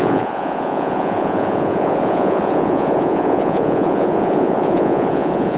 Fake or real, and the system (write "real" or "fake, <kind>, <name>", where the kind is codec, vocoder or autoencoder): fake, vocoder, Vocos